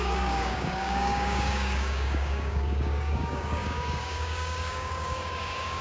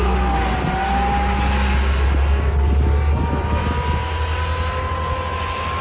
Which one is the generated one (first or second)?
first